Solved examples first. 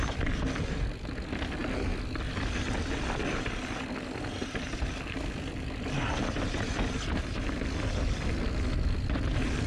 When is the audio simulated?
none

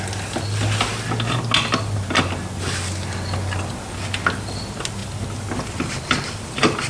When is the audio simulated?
none

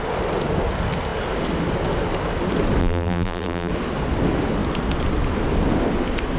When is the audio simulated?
2.8-3.7 (vocoder, BigVGAN v2)

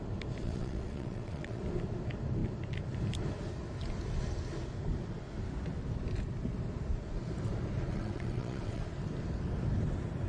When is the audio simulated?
0.4-1.6 (vocoder, WaveNeXt); 7.9-8.8